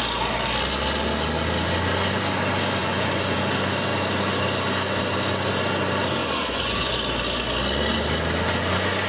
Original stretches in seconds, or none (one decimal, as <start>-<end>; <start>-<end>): 0.0-2.8; 3.4-6.2; 6.9-9.1